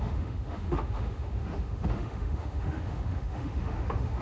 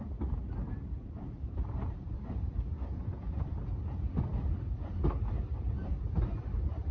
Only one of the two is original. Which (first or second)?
second